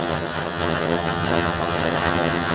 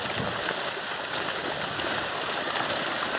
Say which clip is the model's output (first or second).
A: first